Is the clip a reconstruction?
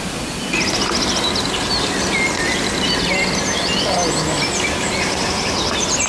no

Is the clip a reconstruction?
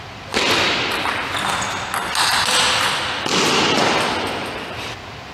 no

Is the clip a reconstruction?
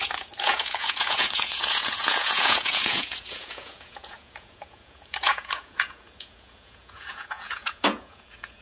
yes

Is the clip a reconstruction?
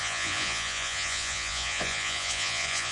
yes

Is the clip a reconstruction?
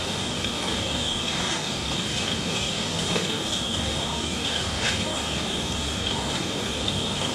yes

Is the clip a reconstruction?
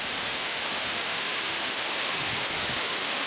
yes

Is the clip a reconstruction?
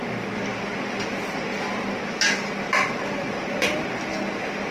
no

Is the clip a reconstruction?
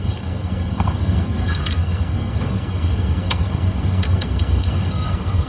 yes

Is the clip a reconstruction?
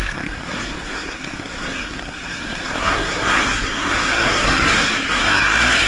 yes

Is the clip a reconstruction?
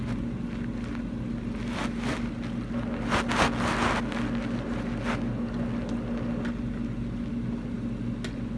no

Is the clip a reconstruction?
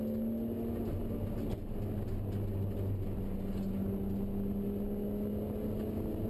no